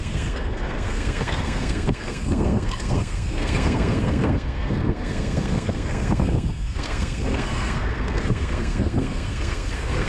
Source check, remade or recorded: remade